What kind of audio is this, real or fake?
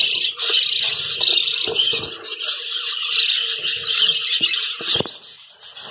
real